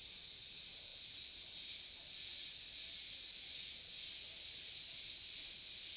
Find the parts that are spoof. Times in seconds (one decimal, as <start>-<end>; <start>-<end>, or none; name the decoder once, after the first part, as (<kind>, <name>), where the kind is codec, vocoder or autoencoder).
none